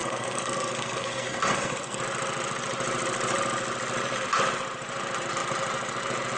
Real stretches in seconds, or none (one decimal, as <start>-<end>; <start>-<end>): 2.0-6.4